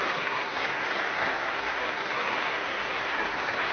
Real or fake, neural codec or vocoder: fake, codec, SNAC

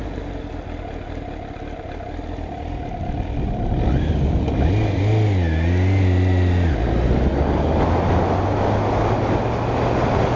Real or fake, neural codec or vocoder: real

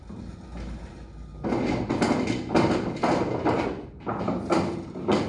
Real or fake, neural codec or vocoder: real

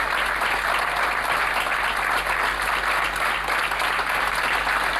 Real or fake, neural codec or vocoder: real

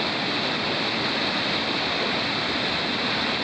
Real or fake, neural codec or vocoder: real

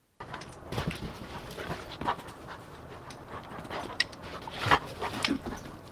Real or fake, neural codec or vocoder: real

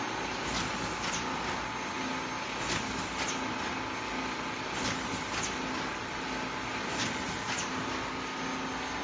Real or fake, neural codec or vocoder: real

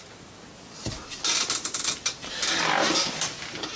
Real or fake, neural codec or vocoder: real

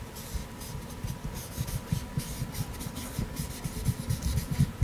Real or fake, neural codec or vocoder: real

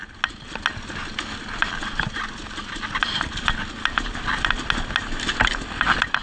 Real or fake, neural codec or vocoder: real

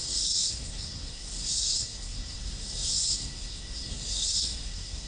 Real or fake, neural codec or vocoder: fake, codec, SNAC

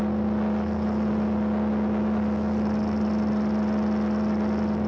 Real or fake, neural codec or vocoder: real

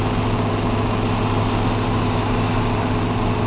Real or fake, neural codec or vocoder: real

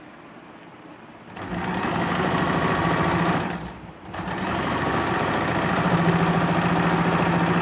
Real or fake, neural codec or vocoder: real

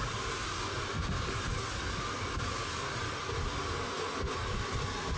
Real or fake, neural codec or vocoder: real